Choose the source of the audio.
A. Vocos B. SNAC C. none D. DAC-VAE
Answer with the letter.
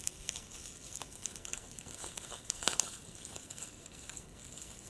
B